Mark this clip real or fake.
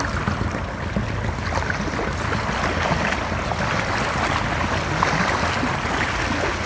real